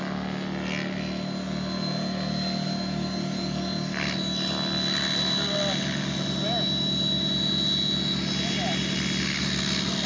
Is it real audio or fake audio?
real